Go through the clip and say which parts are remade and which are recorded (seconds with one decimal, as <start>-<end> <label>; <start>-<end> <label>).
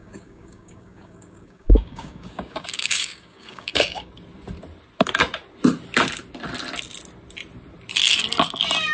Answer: 0.0-4.1 remade; 4.1-8.9 recorded